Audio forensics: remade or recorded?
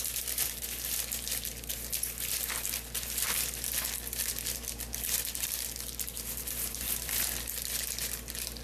remade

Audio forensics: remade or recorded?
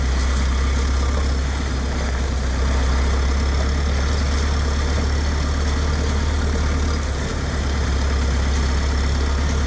recorded